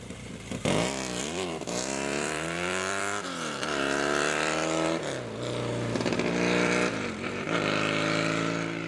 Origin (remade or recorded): remade